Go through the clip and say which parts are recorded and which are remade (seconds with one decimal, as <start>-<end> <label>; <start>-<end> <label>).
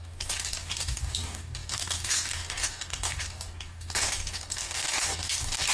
0.0-5.7 remade